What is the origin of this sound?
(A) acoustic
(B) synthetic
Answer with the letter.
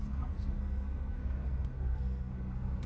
B